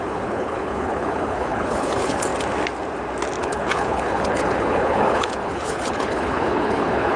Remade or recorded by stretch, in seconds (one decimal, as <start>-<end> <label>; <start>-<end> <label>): 0.0-2.3 remade; 2.3-3.4 recorded; 3.4-7.2 remade